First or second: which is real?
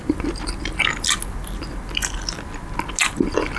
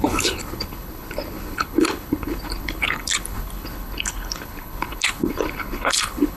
first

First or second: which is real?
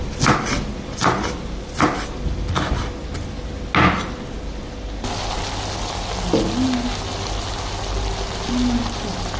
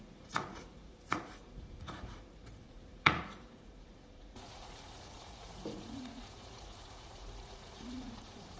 first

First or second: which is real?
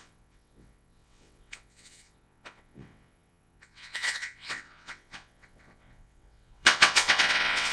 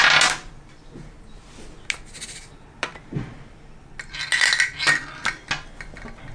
second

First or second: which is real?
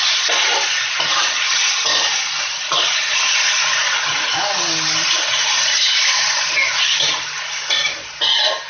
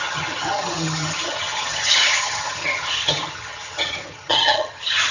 first